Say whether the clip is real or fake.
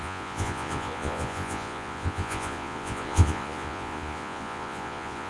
fake